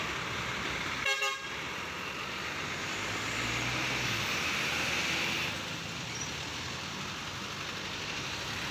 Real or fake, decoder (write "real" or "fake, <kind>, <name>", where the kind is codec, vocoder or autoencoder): real